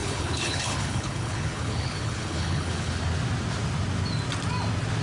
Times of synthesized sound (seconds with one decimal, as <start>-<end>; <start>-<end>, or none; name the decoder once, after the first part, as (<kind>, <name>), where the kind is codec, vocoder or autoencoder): 0.0-3.0 (codec, HILCodec)